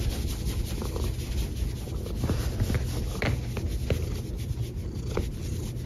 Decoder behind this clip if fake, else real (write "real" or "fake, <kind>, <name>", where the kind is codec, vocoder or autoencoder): real